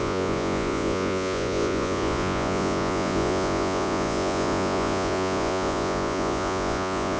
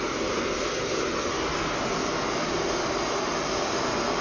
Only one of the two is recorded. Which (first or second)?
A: second